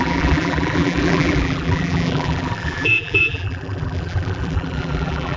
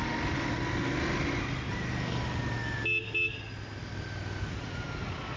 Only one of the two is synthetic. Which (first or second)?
first